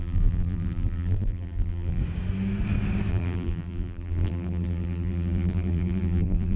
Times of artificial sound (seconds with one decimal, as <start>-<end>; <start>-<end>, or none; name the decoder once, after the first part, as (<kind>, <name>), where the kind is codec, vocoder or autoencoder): 0.0-2.0 (vocoder, BigVGAN v2); 3.1-6.6